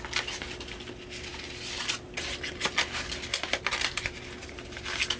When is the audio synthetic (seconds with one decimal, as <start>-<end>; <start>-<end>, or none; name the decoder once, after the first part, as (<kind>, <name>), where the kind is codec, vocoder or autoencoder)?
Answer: none